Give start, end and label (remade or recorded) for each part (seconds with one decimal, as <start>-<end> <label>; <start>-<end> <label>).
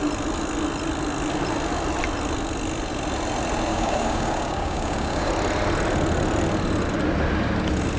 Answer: 0.0-3.7 recorded; 3.7-5.3 remade; 5.3-8.0 recorded